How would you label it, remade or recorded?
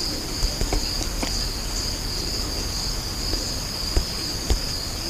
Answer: recorded